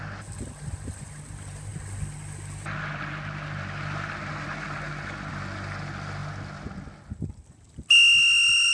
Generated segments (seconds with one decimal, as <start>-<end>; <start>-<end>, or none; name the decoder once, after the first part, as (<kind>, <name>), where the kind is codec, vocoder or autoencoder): none